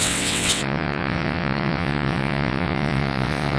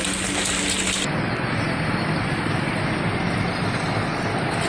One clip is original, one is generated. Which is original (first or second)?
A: second